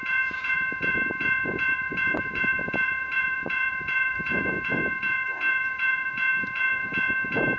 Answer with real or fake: fake